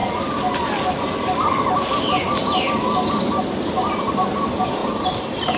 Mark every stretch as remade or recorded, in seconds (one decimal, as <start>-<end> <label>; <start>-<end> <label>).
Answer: 0.0-4.8 recorded; 4.8-5.6 remade